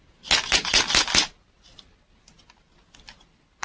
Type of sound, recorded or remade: recorded